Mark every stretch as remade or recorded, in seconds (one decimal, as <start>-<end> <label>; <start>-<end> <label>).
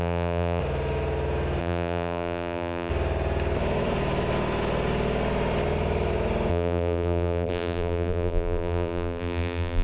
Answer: 0.0-0.6 remade; 0.6-1.6 recorded; 1.6-2.9 remade; 2.9-6.5 recorded; 6.5-9.8 remade